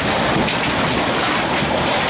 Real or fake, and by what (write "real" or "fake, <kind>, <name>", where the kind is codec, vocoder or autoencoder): real